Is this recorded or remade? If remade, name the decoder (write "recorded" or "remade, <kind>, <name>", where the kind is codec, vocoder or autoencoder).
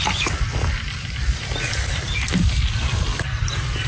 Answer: recorded